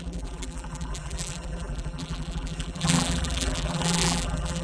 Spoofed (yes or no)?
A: yes